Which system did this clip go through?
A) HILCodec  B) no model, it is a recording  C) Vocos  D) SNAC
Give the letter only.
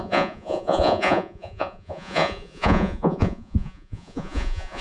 C